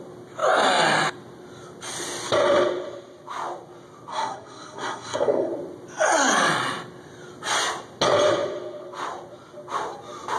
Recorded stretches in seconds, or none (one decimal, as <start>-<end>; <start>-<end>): 0.0-4.1; 5.5-10.4